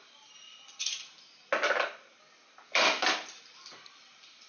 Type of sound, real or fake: real